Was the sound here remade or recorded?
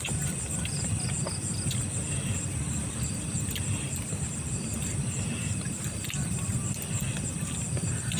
recorded